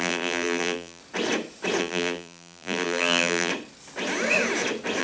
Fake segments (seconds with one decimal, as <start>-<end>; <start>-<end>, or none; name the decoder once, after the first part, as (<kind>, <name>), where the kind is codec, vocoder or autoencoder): 0.0-1.0 (vocoder, BigVGAN v2); 1.8-3.5